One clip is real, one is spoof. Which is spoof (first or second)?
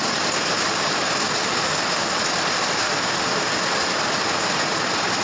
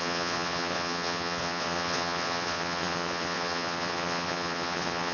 second